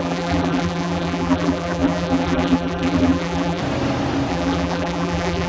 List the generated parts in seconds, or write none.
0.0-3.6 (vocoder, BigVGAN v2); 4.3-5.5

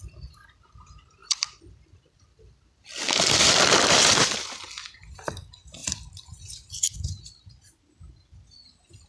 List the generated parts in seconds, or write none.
1.2-4.4 (vocoder, BigVGAN v2); 5.8-7.8